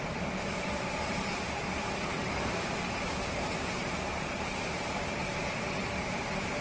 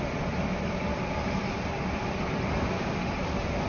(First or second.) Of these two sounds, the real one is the second